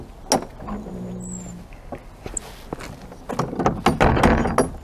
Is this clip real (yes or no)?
yes